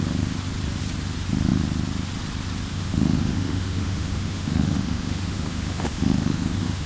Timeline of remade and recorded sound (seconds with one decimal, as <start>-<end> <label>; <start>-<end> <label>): 0.0-2.7 recorded; 2.7-6.9 remade